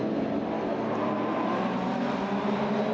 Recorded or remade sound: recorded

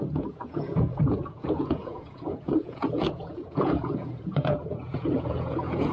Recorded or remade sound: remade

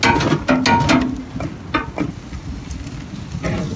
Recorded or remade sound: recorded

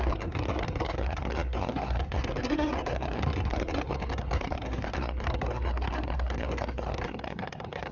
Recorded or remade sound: remade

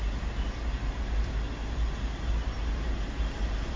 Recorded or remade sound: recorded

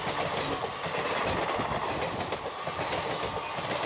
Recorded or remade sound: recorded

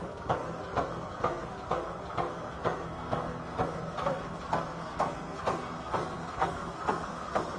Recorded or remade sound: remade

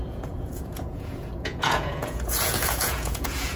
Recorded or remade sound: remade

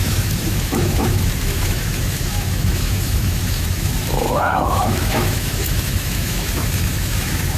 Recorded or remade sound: remade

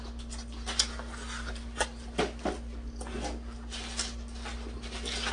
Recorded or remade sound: recorded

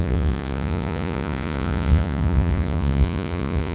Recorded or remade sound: remade